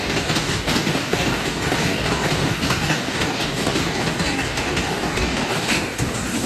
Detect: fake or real fake